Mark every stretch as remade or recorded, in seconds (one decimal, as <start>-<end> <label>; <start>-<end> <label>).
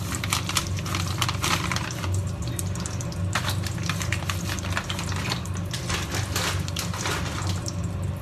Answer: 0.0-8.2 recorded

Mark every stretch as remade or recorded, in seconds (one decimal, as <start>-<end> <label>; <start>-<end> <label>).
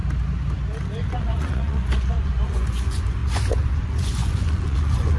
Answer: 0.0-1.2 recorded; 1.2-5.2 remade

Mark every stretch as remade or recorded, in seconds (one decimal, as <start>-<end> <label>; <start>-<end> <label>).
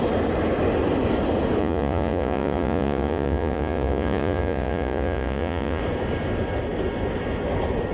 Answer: 0.0-1.6 recorded; 1.6-5.8 remade; 5.8-7.9 recorded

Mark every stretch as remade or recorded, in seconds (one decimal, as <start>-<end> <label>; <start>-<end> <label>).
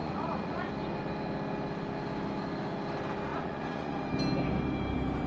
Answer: 0.0-0.7 remade; 0.7-3.3 recorded; 3.3-4.0 remade; 4.0-5.3 recorded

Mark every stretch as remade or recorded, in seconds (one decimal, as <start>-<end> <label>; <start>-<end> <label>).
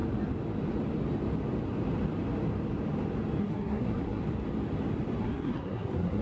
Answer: 0.0-3.4 recorded; 3.4-4.2 remade; 4.2-5.2 recorded; 5.2-6.2 remade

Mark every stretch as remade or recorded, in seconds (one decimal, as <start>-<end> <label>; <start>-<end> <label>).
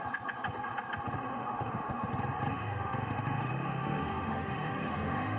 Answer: 0.0-1.3 recorded; 1.3-2.1 remade; 2.1-2.5 recorded; 2.5-5.4 remade